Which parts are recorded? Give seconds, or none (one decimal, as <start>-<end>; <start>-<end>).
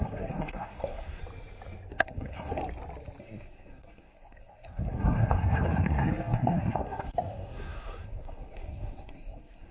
1.2-1.9; 2.6-3.2